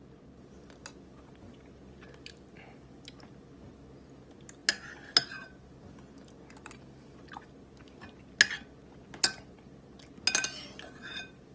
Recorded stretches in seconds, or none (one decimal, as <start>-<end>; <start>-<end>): 0.0-11.5